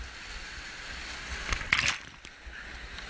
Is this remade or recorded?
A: recorded